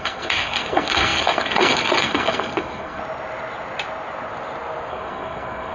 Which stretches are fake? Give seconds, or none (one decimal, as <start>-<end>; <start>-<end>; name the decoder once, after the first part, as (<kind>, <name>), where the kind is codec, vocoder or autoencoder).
0.0-3.0 (codec, SNAC); 4.9-5.7